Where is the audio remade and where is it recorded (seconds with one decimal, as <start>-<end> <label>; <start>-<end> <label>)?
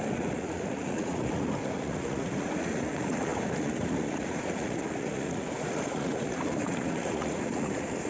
0.0-8.1 remade